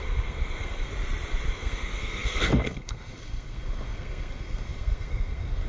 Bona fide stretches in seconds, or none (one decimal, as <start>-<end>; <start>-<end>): 0.9-1.5